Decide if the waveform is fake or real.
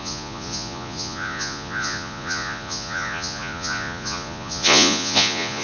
fake